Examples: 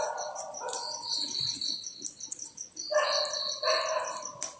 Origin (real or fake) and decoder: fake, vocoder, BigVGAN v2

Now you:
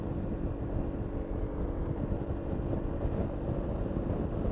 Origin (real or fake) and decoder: real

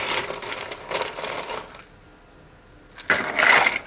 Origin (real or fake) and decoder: real